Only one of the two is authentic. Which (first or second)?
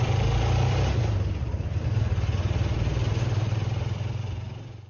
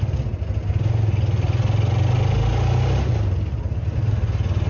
second